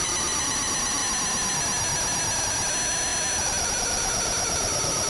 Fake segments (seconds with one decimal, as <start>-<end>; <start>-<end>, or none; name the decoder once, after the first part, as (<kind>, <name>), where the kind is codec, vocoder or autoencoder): 0.0-1.0 (vocoder, BigVGAN v2); 2.4-5.1